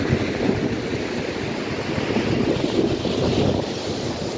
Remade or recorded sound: recorded